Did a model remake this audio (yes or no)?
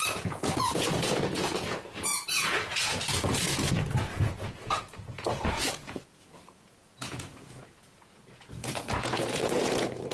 yes